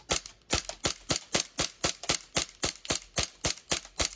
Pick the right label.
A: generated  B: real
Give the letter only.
B